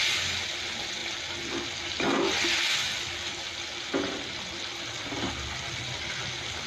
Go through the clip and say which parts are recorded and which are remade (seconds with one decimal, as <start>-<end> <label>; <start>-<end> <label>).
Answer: 0.0-6.7 recorded